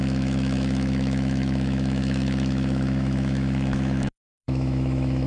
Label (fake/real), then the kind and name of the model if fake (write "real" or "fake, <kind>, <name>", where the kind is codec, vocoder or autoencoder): fake, autoencoder, DAC-VAE